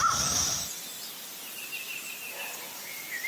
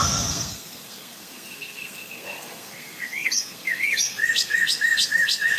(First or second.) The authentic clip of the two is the first